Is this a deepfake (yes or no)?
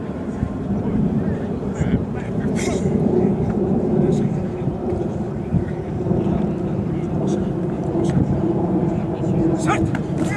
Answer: yes